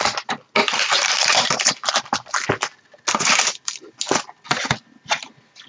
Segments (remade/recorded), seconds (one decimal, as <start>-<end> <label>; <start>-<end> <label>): 0.0-1.0 recorded; 1.0-1.9 remade; 1.9-3.1 recorded; 3.1-3.9 remade; 3.9-5.7 recorded